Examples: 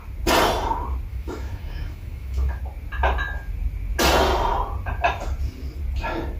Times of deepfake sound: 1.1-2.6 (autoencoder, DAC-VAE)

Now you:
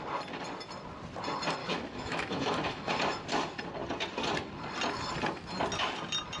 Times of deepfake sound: 1.6-2.9 (autoencoder, DAC-VAE)

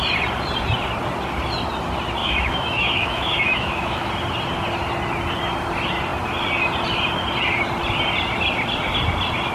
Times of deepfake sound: 2.2-4.1 (autoencoder, DAC-VAE)